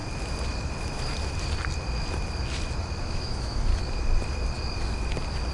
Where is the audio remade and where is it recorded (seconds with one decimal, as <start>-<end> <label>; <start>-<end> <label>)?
0.0-3.0 recorded; 3.0-3.7 remade; 3.7-5.5 recorded